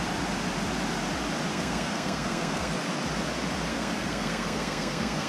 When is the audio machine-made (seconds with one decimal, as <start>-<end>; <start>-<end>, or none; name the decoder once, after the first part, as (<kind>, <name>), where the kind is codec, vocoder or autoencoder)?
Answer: 1.5-2.7 (codec, SNAC); 3.7-5.3